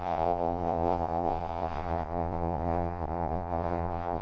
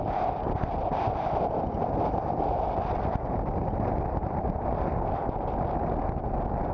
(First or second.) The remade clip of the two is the first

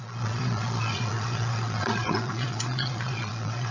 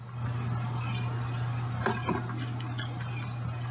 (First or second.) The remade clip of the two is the first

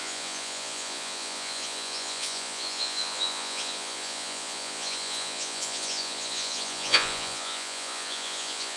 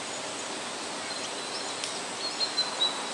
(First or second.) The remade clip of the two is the first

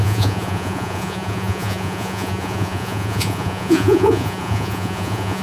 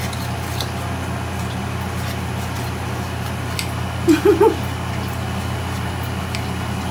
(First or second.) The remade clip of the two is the first